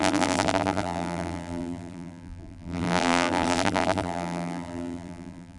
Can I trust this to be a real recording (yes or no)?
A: no